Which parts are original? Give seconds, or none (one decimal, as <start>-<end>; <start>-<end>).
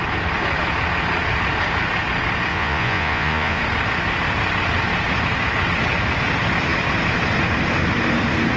0.0-2.5; 3.6-8.6